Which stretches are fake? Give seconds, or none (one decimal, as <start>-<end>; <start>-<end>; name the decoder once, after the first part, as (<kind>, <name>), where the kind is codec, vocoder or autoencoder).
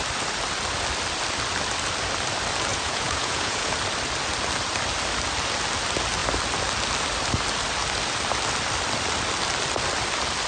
2.7-3.7 (vocoder, Vocos)